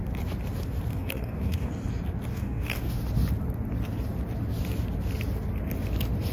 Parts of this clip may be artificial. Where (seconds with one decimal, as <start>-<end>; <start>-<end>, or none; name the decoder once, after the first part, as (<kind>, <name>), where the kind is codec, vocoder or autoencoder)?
0.9-1.7 (codec, DAC); 2.3-2.9